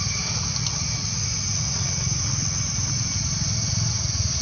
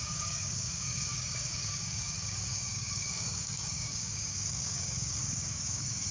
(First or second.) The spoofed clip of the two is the second